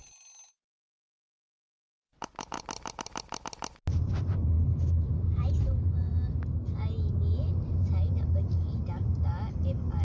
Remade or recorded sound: recorded